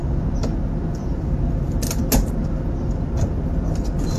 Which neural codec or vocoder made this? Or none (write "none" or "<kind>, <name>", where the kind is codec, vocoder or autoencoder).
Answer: none